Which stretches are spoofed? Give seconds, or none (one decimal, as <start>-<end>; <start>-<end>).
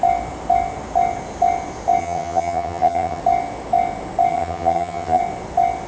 2.0-3.2; 4.3-5.2